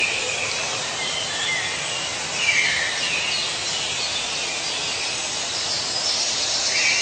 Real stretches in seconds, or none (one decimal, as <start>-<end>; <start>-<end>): 0.0-7.0